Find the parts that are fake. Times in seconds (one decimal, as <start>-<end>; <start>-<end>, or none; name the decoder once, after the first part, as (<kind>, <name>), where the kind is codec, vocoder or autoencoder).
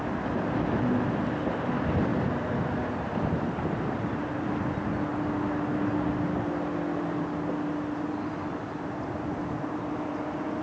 2.1-4.2 (vocoder, BigVGAN v2)